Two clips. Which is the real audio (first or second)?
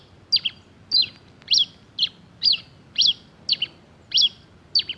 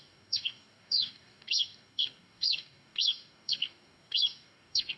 first